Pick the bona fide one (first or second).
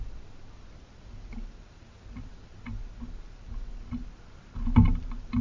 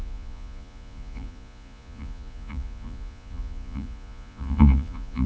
first